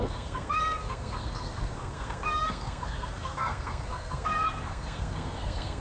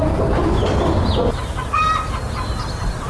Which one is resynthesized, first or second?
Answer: first